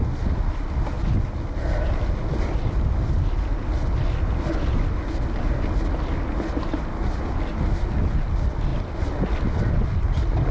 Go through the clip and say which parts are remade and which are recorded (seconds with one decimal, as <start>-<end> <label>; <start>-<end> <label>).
0.0-10.5 recorded